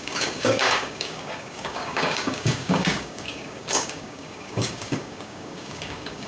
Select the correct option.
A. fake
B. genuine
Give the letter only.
A